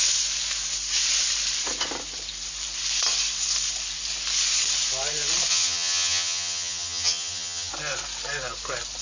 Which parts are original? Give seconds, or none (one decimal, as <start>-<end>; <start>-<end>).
0.0-5.5; 7.7-9.0